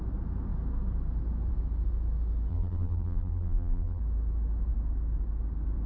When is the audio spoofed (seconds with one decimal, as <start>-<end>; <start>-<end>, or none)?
2.5-4.0